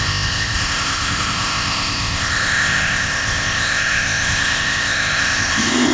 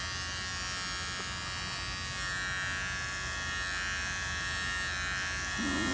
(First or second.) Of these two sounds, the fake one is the first